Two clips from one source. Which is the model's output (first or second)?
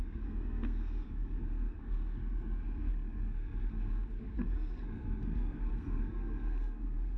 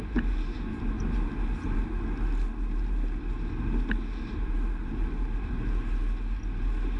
first